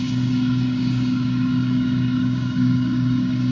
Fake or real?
fake